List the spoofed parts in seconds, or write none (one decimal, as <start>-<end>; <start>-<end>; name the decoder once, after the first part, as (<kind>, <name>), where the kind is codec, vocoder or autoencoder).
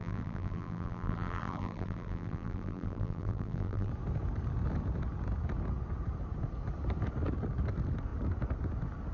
0.0-3.9 (vocoder, BigVGAN v2)